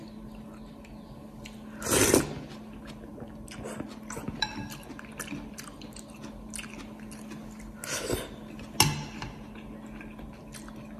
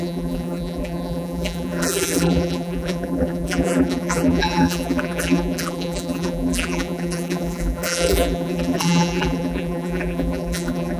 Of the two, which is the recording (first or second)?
first